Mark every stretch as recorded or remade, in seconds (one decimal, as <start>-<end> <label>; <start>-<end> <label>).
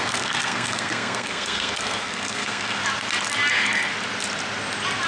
0.0-2.8 remade; 2.8-3.5 recorded; 3.5-3.9 remade; 3.9-5.1 recorded